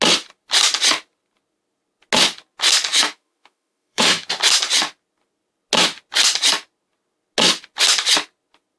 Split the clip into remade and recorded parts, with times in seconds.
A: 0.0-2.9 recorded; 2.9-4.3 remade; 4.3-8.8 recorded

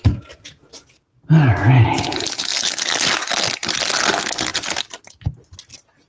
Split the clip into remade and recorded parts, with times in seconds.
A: 0.0-6.1 recorded

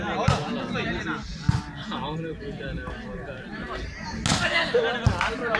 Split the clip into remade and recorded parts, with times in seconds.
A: 0.0-5.6 recorded